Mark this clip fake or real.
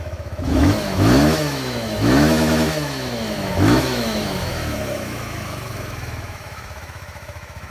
fake